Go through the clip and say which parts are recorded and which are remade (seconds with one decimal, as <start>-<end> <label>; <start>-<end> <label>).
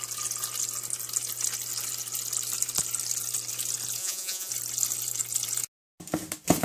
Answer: 0.0-4.0 recorded; 4.0-4.5 remade; 4.5-6.6 recorded